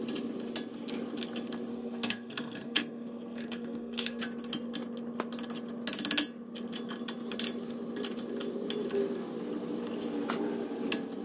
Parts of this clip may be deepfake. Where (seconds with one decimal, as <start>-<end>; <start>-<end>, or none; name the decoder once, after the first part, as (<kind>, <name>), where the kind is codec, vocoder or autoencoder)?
1.7-4.2 (codec, SNAC)